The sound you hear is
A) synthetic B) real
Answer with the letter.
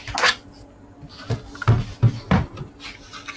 B